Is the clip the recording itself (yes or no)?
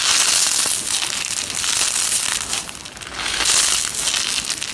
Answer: yes